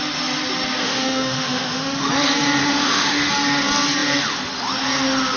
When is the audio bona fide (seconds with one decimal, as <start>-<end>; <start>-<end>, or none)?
0.0-0.8; 2.1-2.6; 3.3-5.4